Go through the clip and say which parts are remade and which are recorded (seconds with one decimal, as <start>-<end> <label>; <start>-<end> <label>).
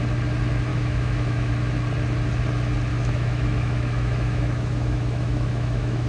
0.0-0.7 recorded; 0.7-1.5 remade; 1.5-2.9 recorded; 2.9-6.1 remade